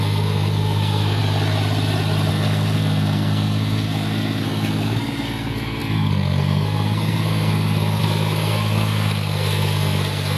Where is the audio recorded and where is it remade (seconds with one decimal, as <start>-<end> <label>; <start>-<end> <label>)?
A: 0.0-1.2 remade; 1.2-2.3 recorded; 2.3-10.4 remade